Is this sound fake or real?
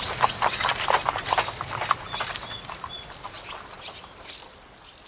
real